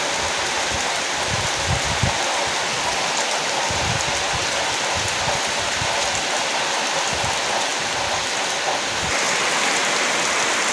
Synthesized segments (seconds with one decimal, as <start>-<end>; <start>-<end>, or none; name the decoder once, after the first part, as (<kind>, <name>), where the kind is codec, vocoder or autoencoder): none